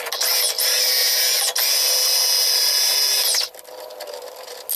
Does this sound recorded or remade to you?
recorded